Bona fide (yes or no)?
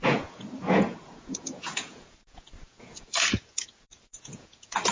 no